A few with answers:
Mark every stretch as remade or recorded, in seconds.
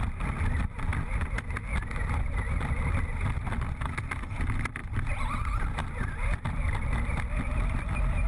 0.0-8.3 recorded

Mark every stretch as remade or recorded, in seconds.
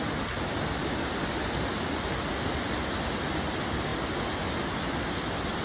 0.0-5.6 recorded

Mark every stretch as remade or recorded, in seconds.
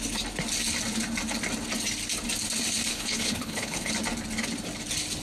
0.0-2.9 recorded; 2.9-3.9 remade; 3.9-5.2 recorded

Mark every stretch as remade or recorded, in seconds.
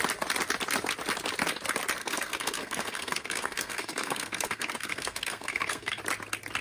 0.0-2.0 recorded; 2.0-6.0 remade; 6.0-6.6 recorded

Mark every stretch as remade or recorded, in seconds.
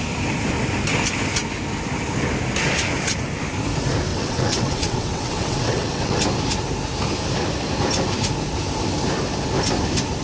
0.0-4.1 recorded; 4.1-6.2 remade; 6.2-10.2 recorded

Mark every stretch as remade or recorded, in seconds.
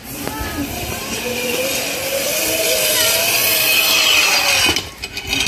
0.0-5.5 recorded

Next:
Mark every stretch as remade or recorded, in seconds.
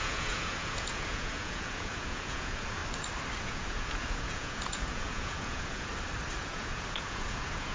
0.0-2.8 remade; 2.8-3.4 recorded; 3.4-5.9 remade; 5.9-6.4 recorded; 6.4-7.7 remade